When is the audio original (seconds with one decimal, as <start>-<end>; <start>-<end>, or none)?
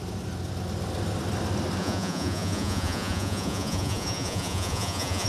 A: 0.0-1.8